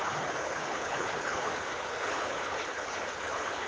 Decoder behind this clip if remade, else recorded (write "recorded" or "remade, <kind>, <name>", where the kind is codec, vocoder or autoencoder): remade, codec, HILCodec